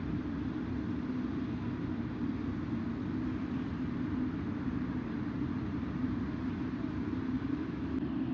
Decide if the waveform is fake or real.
real